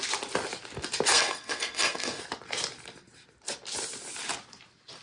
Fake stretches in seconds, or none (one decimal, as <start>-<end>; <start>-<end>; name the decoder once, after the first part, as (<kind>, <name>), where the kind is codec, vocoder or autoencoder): 1.1-2.2 (codec, SNAC)